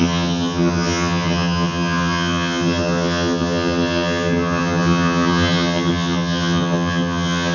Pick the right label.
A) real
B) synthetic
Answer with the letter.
B